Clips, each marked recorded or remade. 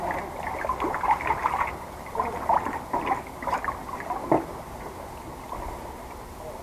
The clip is recorded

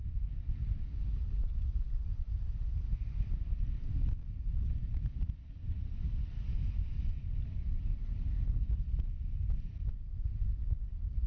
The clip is recorded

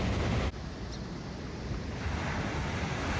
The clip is recorded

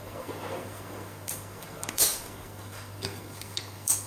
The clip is remade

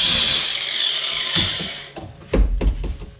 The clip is remade